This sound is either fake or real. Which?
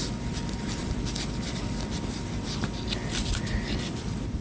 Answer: real